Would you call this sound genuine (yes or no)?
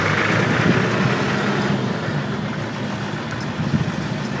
yes